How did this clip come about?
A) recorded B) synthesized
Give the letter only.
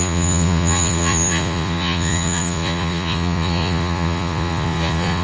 B